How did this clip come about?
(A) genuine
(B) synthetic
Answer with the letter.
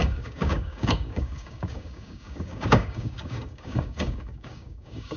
B